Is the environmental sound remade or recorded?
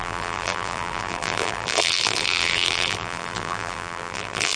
remade